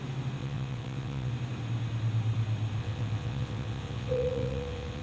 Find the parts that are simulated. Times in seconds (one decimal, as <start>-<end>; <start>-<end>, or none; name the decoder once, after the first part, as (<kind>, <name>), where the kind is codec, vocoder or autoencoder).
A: 0.4-1.3 (vocoder, WaveNeXt); 2.8-5.0